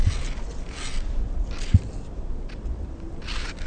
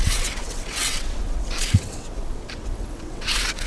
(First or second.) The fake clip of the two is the second